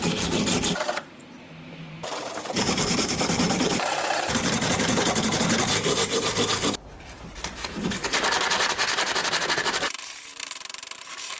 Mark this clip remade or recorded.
remade